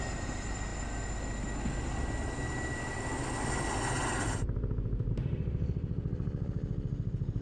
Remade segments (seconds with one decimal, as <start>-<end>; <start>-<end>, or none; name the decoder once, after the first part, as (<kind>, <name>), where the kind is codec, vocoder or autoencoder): none